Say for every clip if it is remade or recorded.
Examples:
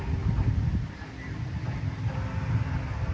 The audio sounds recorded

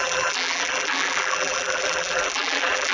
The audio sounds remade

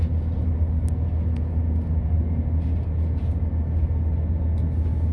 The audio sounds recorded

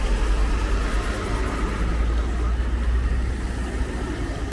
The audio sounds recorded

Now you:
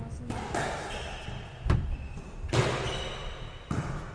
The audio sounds recorded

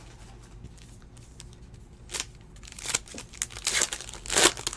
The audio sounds recorded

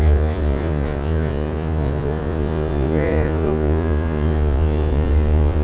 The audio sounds remade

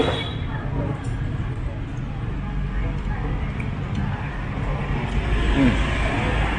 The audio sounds recorded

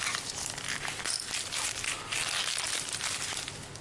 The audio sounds recorded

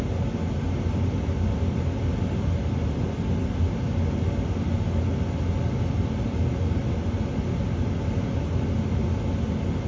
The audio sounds recorded